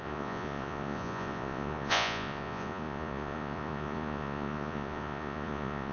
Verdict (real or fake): fake